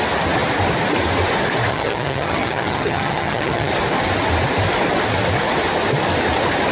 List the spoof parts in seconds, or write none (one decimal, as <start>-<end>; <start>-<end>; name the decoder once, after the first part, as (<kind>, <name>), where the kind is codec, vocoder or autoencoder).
1.7-3.7 (vocoder, HiFi-GAN)